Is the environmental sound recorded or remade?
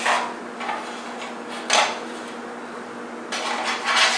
recorded